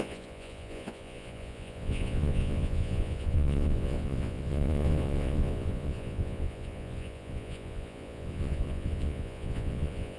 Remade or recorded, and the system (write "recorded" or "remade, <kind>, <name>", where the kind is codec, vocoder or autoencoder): remade, vocoder, Vocos